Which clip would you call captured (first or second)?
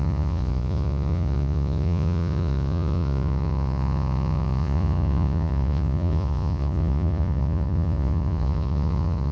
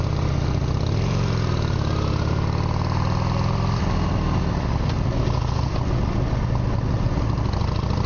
second